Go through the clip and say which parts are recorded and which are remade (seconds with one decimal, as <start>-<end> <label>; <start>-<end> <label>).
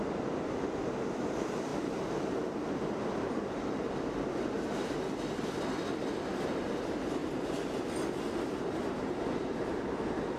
0.0-10.4 recorded